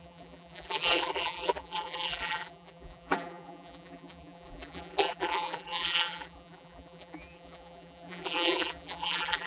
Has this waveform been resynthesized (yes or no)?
yes